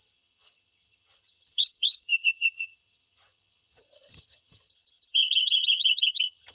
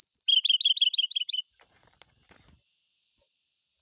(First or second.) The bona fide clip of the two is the second